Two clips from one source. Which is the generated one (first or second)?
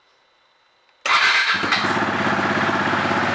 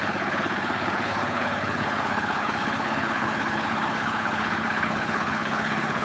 second